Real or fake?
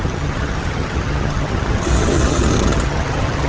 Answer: fake